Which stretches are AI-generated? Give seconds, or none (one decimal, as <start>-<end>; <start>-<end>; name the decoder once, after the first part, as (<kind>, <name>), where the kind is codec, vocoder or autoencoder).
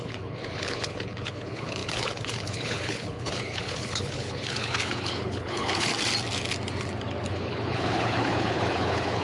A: 0.0-5.9 (codec, HILCodec); 7.3-9.2